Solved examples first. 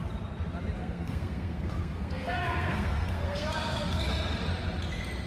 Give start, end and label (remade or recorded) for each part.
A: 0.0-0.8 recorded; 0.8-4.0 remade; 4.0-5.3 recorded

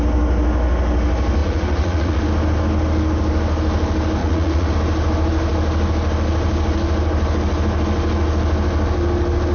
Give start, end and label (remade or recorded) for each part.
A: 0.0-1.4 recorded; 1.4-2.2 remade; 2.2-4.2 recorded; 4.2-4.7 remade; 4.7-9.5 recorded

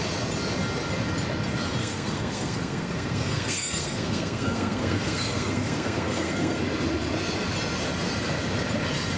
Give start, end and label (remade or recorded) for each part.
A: 0.0-1.8 recorded; 1.8-6.6 remade; 6.6-9.2 recorded

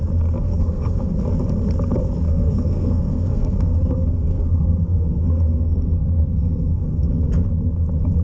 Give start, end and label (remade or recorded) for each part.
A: 0.0-0.4 recorded; 0.4-1.1 remade; 1.1-2.3 recorded; 2.3-7.2 remade; 7.2-8.2 recorded